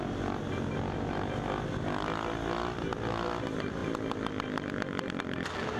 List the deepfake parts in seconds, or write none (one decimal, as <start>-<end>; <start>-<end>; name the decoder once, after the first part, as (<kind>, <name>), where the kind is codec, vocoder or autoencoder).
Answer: none